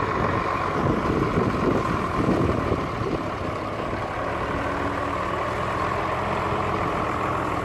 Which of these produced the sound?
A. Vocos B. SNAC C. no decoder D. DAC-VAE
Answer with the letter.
C